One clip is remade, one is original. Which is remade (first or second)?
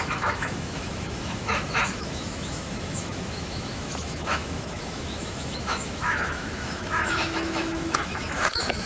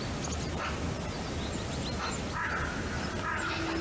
first